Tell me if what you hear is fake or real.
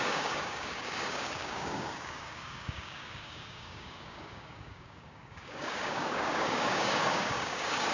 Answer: fake